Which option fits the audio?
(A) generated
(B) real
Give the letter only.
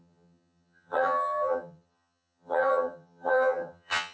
A